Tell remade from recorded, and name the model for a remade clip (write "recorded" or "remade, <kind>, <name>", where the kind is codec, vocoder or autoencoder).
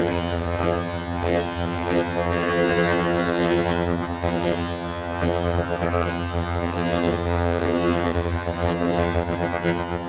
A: remade, vocoder, HiFi-GAN